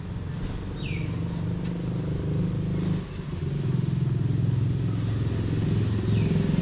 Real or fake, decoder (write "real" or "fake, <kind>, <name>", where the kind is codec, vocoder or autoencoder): real